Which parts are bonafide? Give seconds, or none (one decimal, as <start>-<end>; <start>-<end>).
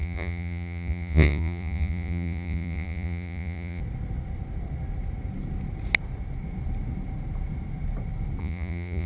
3.8-8.4